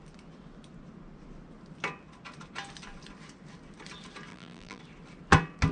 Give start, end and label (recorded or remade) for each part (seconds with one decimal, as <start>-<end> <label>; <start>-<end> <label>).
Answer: 0.0-4.3 recorded; 4.3-4.8 remade; 4.8-5.7 recorded